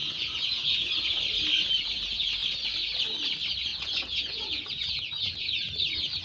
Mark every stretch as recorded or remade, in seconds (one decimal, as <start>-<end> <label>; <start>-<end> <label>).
0.0-0.9 remade; 0.9-3.7 recorded; 3.7-5.7 remade; 5.7-6.2 recorded